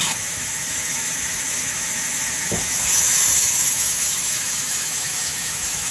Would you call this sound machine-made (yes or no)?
yes